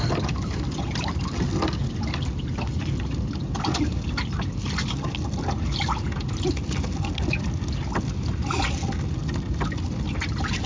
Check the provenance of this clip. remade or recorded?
recorded